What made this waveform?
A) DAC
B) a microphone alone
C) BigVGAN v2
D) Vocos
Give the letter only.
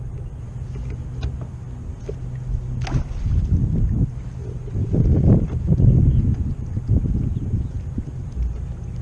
B